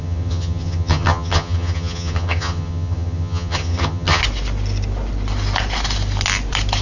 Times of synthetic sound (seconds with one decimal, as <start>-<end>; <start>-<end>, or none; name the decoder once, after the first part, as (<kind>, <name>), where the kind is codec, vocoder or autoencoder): 0.0-4.2 (vocoder, HiFi-GAN)